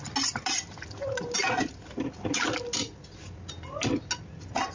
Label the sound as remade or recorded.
recorded